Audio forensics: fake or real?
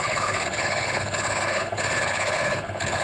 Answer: fake